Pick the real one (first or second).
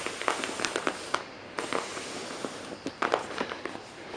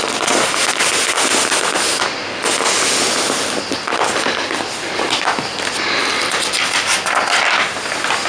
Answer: second